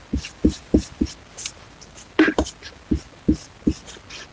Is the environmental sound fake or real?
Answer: real